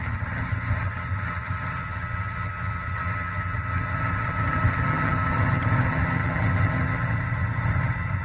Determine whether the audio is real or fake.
fake